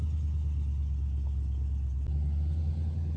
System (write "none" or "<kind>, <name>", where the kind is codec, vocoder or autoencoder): none